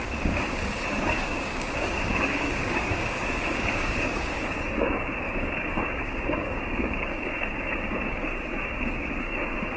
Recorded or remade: remade